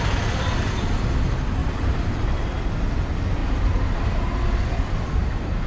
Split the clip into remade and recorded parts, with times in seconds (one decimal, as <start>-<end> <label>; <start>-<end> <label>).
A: 0.0-1.6 recorded; 1.6-2.2 remade; 2.2-3.4 recorded; 3.4-4.2 remade; 4.2-5.2 recorded; 5.2-5.7 remade